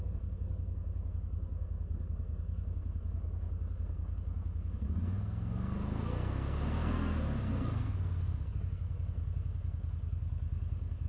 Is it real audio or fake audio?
fake